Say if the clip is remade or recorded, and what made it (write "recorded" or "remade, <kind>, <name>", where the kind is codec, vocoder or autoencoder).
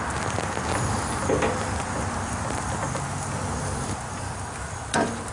recorded